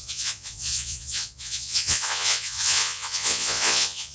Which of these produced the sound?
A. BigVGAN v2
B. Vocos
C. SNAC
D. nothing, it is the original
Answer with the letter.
B